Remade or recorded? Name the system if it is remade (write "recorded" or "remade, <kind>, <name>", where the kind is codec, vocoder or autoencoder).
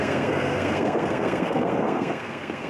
remade, codec, SNAC